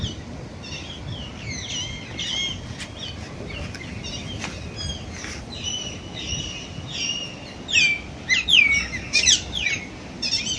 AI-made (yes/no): no